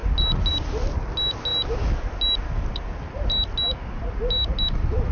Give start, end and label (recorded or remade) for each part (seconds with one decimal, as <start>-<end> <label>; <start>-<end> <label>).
0.0-5.1 recorded